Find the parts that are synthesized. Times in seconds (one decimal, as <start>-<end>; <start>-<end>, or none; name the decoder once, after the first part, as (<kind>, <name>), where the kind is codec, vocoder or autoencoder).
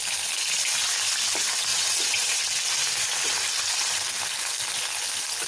1.7-2.4 (vocoder, WaveNeXt)